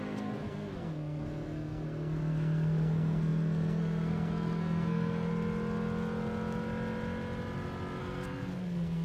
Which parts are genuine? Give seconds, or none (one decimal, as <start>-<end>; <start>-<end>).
5.3-8.0